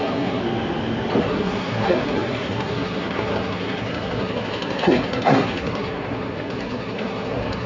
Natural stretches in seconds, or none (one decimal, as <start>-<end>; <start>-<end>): 0.4-1.2